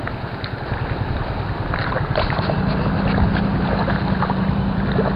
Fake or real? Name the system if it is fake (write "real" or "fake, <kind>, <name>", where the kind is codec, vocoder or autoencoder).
real